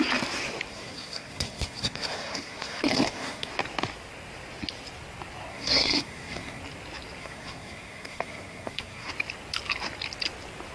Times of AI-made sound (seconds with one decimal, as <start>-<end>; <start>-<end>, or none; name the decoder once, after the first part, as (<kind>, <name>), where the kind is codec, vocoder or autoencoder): 0.7-3.5 (codec, SNAC); 5.5-6.6; 7.2-9.1